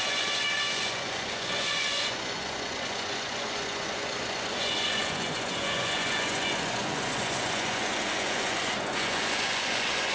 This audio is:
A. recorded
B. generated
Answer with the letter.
B